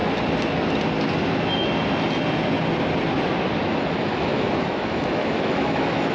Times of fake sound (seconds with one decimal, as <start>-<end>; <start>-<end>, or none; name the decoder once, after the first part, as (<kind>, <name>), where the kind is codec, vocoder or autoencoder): 3.7-6.1 (autoencoder, DAC-VAE)